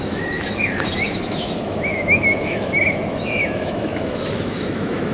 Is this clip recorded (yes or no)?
no